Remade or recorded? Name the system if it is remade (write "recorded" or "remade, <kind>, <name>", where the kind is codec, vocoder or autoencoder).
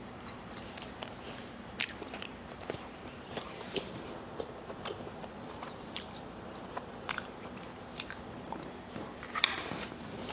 remade, vocoder, BigVGAN v2